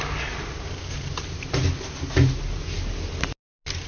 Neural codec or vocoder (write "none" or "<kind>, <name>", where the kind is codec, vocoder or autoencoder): none